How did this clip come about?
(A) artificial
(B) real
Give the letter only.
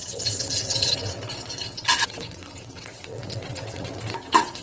A